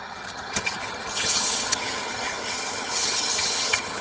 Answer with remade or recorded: remade